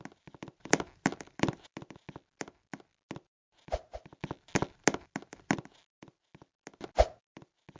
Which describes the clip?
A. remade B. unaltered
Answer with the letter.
B